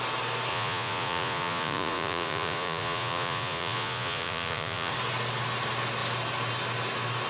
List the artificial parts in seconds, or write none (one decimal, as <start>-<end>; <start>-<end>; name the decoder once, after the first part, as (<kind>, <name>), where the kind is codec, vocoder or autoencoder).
0.5-4.9 (vocoder, Vocos)